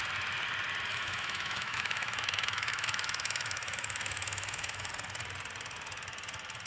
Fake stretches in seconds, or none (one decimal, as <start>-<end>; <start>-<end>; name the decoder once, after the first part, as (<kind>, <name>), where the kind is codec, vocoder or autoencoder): 0.9-4.9 (autoencoder, DAC-VAE)